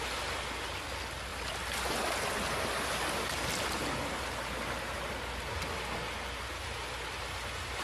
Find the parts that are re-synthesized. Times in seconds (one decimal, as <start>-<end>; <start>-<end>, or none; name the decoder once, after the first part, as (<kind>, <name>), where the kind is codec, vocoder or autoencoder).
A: none